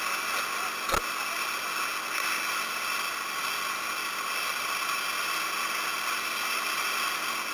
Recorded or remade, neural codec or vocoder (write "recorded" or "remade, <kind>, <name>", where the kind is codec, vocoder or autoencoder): recorded